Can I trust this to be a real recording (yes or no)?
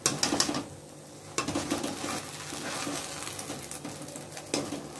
yes